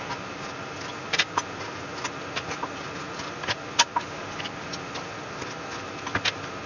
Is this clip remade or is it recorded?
recorded